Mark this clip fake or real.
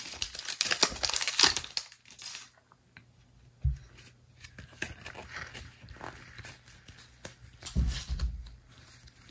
real